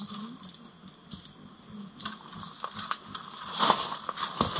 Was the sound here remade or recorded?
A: recorded